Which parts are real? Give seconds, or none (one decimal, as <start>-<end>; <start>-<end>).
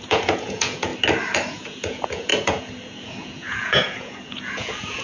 0.9-1.5